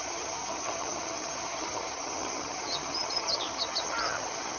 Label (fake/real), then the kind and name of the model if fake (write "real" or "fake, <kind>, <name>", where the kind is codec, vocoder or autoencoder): fake, vocoder, HiFi-GAN